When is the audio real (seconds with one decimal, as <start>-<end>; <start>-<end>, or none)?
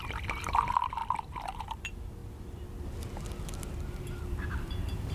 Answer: 2.2-4.2